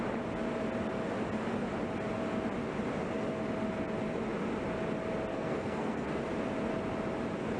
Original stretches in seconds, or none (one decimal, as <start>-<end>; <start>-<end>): 0.0-5.3; 6.2-7.6